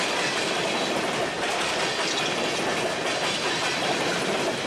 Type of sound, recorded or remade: recorded